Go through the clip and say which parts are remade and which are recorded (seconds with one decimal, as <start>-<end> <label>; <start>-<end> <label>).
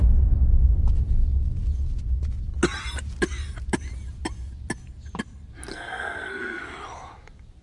0.0-5.7 recorded; 5.7-6.6 remade; 6.6-7.6 recorded